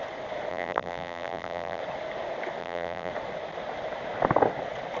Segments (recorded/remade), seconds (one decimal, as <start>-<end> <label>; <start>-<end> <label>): 0.0-0.5 recorded; 0.5-1.8 remade; 1.8-2.6 recorded; 2.6-3.1 remade; 3.1-5.0 recorded